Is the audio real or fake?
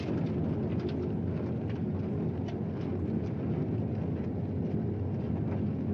real